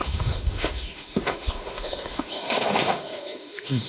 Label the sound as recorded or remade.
remade